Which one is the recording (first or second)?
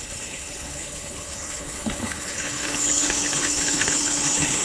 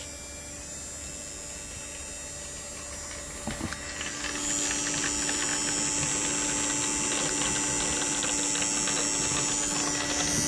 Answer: second